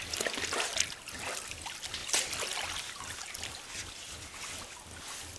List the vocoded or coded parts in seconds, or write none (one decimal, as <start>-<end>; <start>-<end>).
none